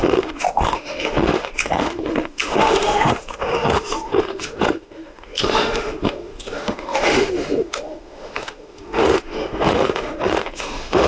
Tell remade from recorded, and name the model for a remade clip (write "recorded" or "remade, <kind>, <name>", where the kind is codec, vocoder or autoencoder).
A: remade, autoencoder, DAC-VAE